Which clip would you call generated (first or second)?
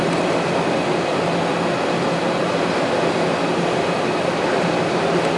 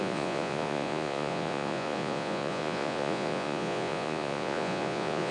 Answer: second